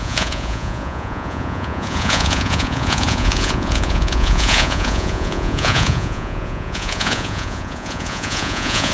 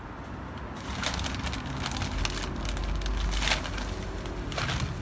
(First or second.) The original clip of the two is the second